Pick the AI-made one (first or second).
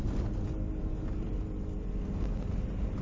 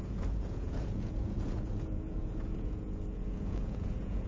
second